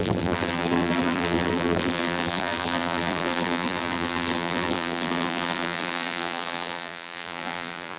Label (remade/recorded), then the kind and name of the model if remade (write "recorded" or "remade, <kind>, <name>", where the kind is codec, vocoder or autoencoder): remade, vocoder, BigVGAN v2